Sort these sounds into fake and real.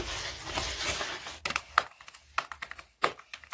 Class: real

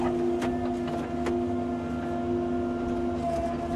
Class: real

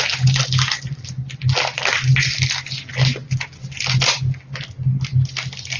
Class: real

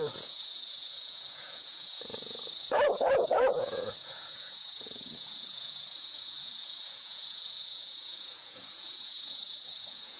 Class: fake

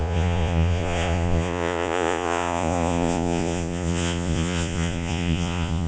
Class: fake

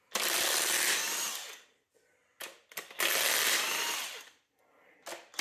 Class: real